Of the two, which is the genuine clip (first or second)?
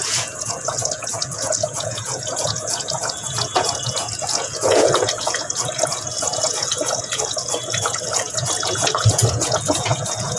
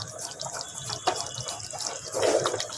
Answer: second